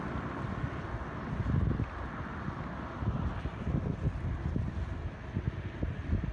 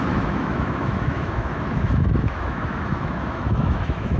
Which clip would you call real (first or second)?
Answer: first